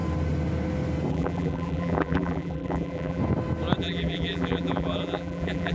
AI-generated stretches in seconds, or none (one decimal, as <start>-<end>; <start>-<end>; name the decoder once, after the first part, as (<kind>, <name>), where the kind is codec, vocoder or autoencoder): 1.1-3.2 (vocoder, BigVGAN v2); 3.8-5.7